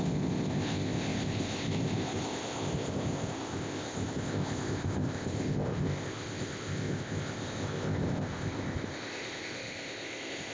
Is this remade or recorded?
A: remade